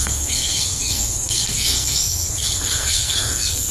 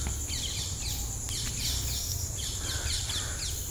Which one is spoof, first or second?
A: first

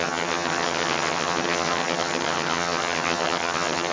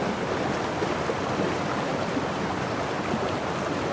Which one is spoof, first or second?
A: first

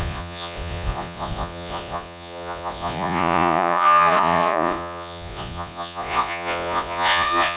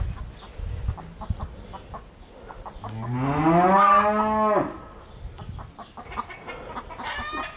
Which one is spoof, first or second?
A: first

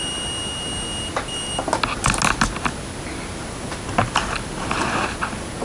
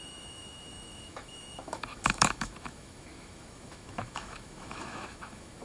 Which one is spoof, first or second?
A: second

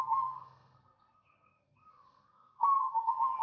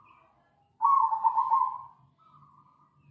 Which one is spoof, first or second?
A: first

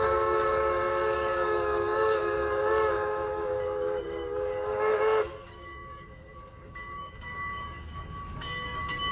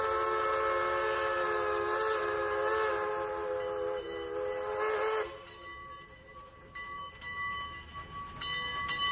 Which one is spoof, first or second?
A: first